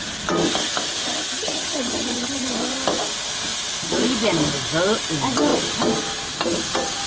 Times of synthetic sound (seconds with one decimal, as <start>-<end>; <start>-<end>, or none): 1.4-2.5